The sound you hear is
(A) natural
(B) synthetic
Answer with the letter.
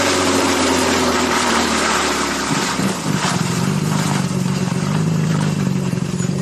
B